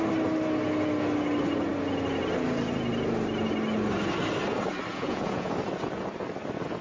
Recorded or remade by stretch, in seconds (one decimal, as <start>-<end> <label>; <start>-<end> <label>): 0.0-4.9 recorded; 4.9-5.5 remade; 5.5-6.8 recorded